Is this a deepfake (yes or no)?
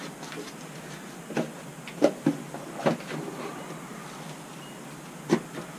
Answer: no